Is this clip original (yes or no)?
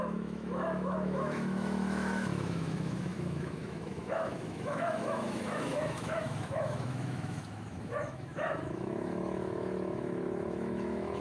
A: no